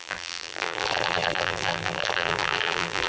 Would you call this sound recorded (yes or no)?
no